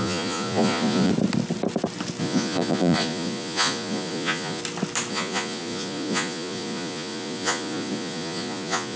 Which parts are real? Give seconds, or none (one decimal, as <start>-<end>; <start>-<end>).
1.1-2.2; 4.6-5.1